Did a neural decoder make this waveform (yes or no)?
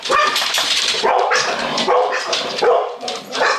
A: yes